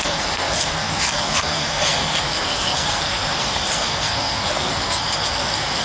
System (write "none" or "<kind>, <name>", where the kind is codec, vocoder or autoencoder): codec, SNAC